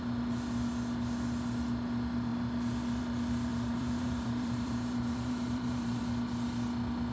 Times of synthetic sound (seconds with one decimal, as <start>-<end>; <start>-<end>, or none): 3.5-6.0